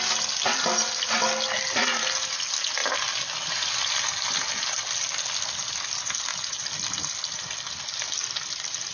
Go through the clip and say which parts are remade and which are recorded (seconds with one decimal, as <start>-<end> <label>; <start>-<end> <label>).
0.0-2.8 remade; 2.8-4.5 recorded; 4.5-8.9 remade